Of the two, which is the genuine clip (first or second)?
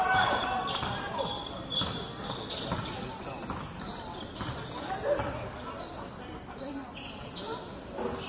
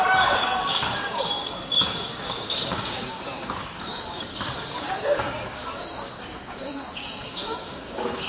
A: first